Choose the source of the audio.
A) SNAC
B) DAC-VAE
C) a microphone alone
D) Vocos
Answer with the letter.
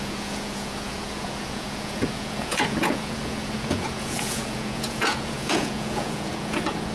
D